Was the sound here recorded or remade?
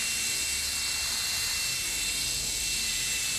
recorded